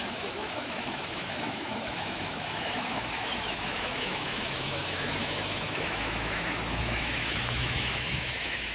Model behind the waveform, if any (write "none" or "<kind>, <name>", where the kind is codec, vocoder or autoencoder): autoencoder, DAC-VAE